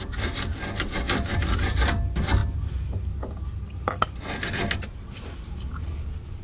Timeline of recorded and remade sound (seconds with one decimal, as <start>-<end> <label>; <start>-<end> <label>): 0.0-6.4 recorded